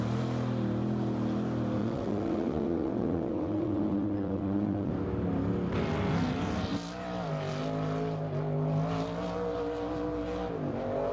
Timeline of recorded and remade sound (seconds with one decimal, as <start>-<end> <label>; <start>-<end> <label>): 0.0-1.8 recorded; 1.8-4.9 remade; 4.9-11.1 recorded